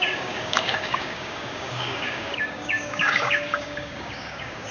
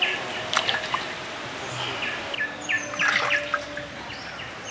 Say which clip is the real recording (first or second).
second